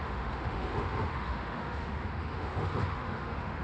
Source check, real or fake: fake